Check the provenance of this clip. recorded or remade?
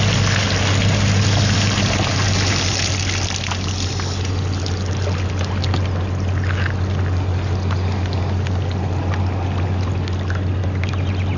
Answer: recorded